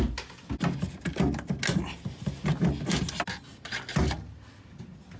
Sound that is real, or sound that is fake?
real